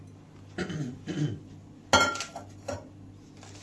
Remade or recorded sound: recorded